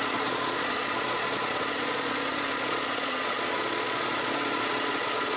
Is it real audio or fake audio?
fake